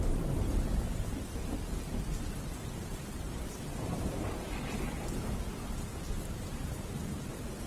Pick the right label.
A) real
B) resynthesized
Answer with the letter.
A